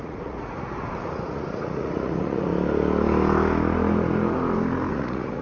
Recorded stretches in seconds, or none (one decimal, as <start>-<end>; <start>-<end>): 2.5-4.9